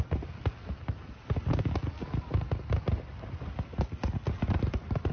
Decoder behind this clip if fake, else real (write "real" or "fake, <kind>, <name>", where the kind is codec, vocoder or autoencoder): real